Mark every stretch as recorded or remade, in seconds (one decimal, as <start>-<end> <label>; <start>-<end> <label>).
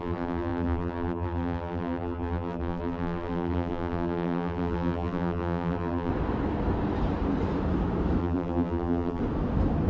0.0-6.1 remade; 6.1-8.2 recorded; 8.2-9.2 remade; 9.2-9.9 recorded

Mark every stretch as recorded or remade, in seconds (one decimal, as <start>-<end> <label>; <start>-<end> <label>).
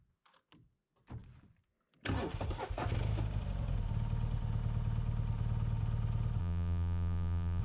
0.0-6.4 recorded; 6.4-7.6 remade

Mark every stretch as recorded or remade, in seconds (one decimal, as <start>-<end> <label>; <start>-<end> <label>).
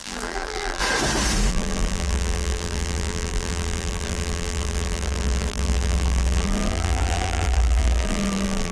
0.0-0.8 remade; 0.8-1.5 recorded; 1.5-8.7 remade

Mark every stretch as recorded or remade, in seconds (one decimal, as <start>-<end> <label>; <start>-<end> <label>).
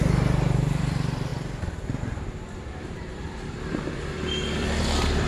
0.0-5.3 remade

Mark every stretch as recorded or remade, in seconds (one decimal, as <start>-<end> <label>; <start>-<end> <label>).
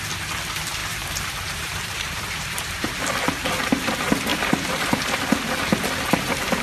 0.0-0.8 recorded; 0.8-3.0 remade; 3.0-4.3 recorded; 4.3-5.2 remade; 5.2-6.6 recorded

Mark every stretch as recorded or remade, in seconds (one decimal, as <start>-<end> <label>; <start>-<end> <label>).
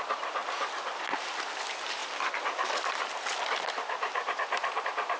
0.0-0.4 recorded; 0.4-1.1 remade; 1.1-2.0 recorded; 2.0-4.8 remade; 4.8-5.2 recorded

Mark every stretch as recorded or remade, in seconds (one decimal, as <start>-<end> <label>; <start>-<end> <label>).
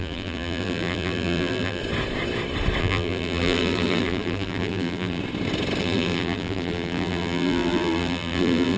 0.0-1.8 remade; 1.8-2.8 recorded; 2.8-5.2 remade; 5.2-5.8 recorded; 5.8-8.8 remade